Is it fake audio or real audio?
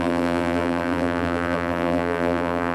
fake